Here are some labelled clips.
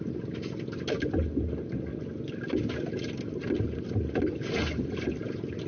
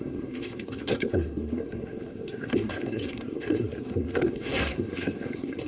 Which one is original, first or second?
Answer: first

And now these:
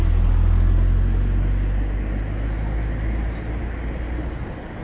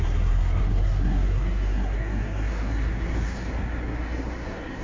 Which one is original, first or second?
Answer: first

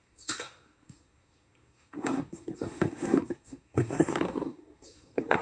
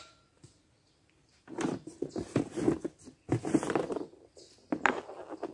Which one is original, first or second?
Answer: second